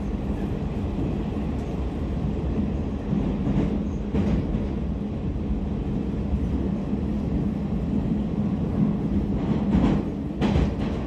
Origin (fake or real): real